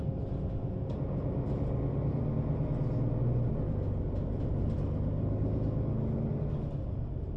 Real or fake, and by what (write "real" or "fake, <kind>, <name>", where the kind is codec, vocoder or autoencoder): real